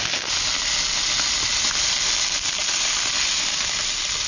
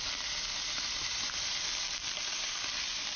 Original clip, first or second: first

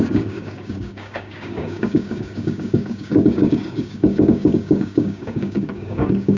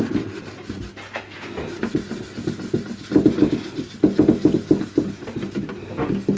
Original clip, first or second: second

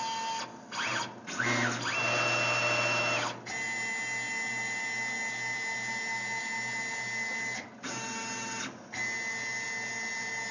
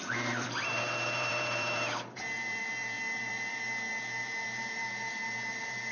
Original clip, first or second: first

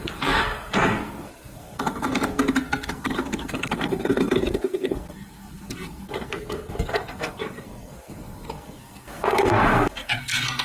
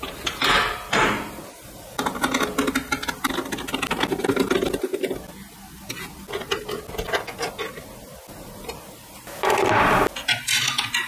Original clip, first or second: second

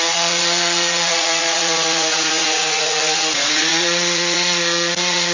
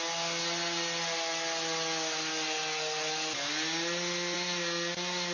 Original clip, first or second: second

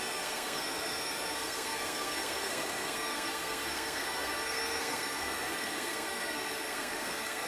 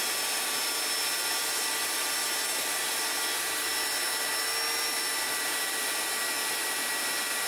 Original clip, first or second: second